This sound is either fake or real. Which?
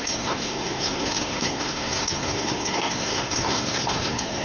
fake